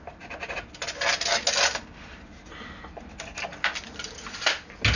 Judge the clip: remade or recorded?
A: recorded